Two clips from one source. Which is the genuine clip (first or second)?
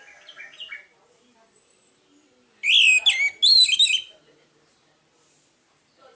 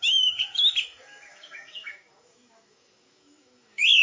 first